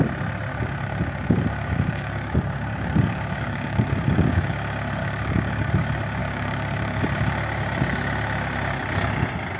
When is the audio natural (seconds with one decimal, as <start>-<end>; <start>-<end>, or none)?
0.0-0.5; 4.5-5.0; 5.7-6.2; 7.0-9.6